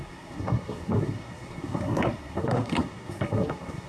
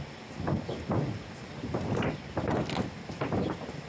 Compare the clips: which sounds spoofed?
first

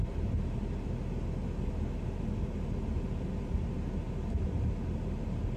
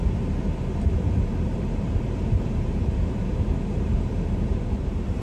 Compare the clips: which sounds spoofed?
second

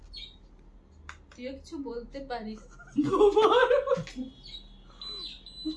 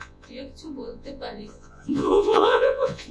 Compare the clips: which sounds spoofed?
second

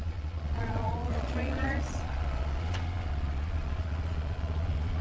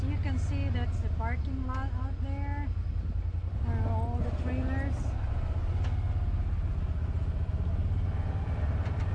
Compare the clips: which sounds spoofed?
first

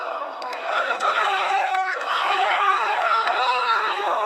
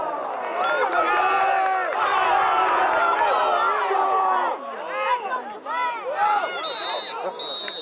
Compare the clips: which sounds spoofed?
first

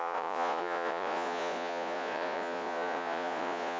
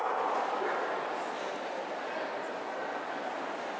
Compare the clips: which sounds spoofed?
first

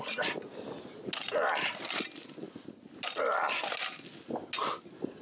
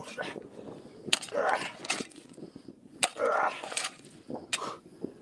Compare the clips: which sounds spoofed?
second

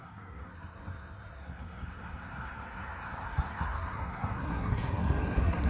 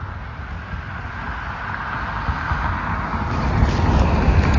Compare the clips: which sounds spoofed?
first